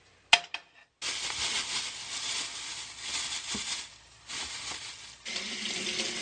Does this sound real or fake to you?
real